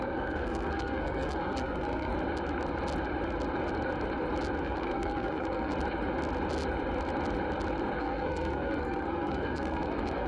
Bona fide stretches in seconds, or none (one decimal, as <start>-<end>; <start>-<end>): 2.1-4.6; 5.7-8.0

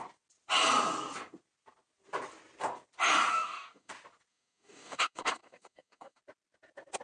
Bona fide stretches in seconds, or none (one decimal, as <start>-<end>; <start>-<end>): 0.0-3.3; 3.9-4.3; 6.2-7.0

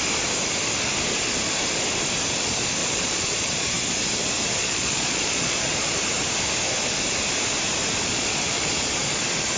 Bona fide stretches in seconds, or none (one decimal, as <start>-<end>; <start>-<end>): 0.0-2.8; 3.7-4.6; 5.9-8.1; 9.2-9.6

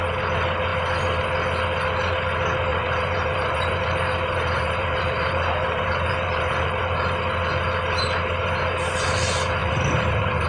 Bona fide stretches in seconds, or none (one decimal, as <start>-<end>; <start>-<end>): 0.0-2.7; 6.8-9.6

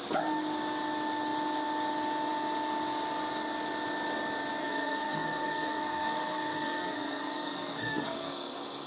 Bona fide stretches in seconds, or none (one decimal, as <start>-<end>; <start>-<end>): 0.0-4.6

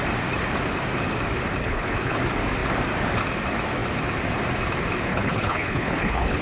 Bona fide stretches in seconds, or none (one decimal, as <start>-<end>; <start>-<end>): 0.0-1.6; 2.2-5.1

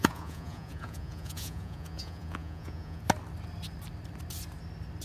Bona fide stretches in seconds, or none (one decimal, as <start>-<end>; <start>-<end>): 3.0-5.0